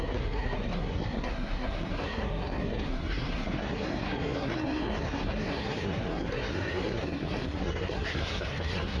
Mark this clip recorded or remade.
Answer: remade